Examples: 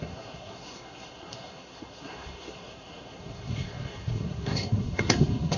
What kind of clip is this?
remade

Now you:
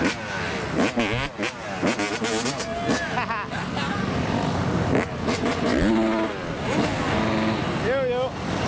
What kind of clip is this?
recorded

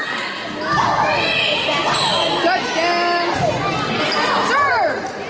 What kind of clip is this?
recorded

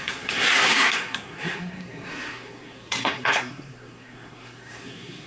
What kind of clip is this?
remade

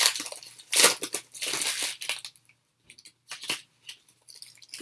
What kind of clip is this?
recorded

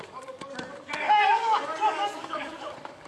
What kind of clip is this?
remade